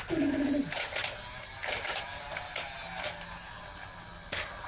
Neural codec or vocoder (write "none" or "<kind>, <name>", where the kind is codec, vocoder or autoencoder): none